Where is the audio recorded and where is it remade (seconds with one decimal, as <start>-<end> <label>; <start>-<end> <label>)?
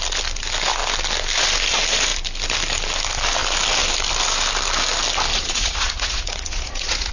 0.0-5.3 recorded; 5.3-7.1 remade